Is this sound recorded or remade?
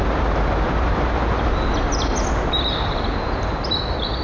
recorded